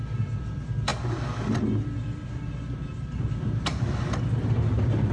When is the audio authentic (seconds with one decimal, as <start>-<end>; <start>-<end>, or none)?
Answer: 0.0-5.1